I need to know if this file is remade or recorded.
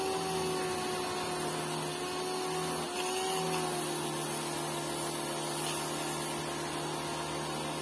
recorded